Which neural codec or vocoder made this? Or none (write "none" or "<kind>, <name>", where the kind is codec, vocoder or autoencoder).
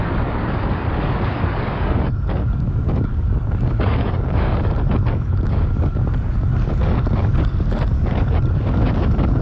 codec, DAC